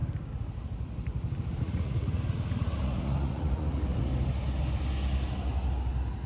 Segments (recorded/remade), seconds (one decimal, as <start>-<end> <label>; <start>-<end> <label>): 0.0-1.6 recorded; 1.6-4.1 remade; 4.1-6.3 recorded